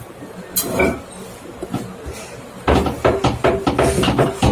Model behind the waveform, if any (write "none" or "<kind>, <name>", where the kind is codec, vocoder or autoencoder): none